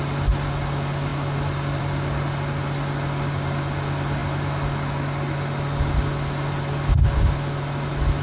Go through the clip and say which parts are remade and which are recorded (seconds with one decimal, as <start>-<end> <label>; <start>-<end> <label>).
0.0-8.2 recorded